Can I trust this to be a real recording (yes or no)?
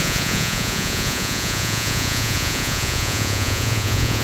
no